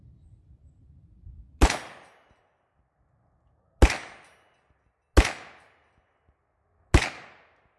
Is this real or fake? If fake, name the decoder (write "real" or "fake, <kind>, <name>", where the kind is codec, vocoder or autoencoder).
real